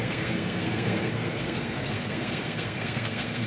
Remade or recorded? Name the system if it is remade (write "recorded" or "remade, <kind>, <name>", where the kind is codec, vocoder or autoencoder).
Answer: remade, codec, SNAC